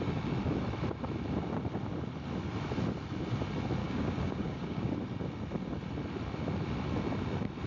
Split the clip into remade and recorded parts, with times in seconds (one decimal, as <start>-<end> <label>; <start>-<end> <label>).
0.0-3.8 recorded; 3.8-4.9 remade; 4.9-7.7 recorded